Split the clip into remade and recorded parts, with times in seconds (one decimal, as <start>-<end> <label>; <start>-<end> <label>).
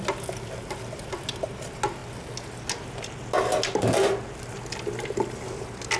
0.0-6.0 recorded